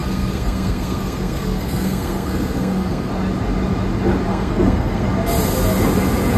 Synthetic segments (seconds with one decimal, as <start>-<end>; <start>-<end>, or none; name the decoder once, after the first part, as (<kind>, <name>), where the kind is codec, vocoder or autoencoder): 0.0-3.1 (codec, SNAC); 4.3-5.1